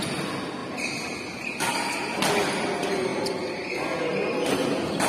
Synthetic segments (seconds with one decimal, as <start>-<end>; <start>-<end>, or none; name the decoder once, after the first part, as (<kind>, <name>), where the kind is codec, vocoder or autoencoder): none